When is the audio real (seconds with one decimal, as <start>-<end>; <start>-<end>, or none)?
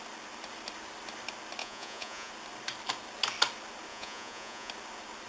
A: 0.0-1.6; 2.3-3.9; 4.7-5.3